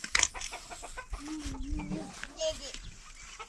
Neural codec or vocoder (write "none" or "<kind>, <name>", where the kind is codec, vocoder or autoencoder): none